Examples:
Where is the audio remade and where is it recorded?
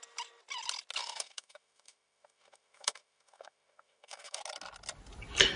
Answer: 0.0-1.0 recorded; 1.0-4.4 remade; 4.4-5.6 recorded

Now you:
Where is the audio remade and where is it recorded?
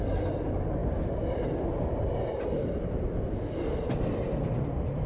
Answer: 0.0-5.1 recorded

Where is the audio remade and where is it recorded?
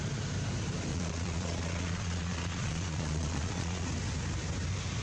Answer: 0.0-0.9 recorded; 0.9-3.9 remade; 3.9-5.0 recorded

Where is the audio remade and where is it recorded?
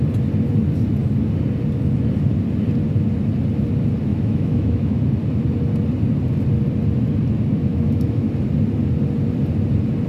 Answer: 0.0-4.1 recorded; 4.1-5.0 remade; 5.0-7.7 recorded; 7.7-8.2 remade; 8.2-10.1 recorded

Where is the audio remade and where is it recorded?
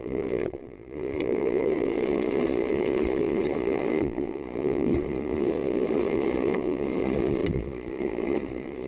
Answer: 0.0-8.9 remade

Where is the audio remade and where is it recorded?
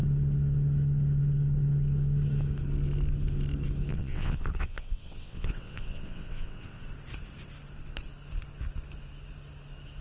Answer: 0.0-3.9 recorded; 3.9-6.8 remade; 6.8-10.0 recorded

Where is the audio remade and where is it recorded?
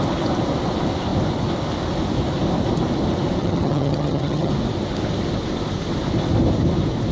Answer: 0.0-3.4 recorded; 3.4-4.5 remade; 4.5-7.1 recorded